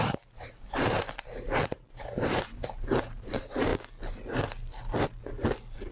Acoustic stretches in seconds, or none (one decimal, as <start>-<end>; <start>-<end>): 3.7-5.9